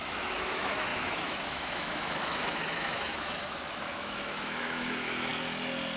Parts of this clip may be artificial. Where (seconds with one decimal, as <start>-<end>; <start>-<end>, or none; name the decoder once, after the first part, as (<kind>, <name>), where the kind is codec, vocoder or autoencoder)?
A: 0.0-5.3 (autoencoder, DAC-VAE)